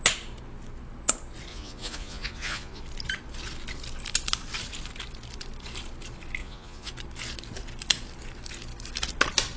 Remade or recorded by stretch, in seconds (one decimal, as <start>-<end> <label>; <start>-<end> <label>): 0.0-1.5 recorded; 1.5-2.8 remade; 2.8-6.4 recorded; 6.4-6.9 remade; 6.9-9.6 recorded